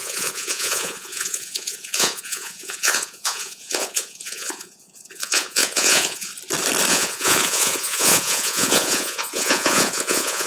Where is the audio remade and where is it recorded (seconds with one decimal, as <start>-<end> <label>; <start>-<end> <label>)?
0.0-6.3 remade; 6.3-6.9 recorded; 6.9-10.5 remade